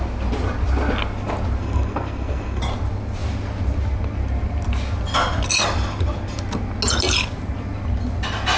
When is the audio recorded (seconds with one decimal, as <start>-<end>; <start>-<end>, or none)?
0.0-1.6; 2.6-8.6